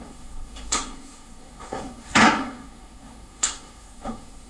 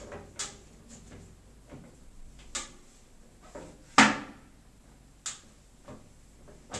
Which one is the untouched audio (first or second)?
second